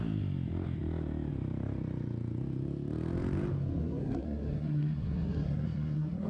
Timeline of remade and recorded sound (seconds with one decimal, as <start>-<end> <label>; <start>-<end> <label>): 0.0-3.8 recorded; 3.8-6.3 remade